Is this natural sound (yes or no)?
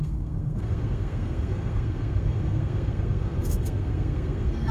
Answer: no